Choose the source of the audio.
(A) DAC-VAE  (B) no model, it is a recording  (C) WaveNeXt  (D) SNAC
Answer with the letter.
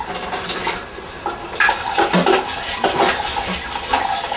B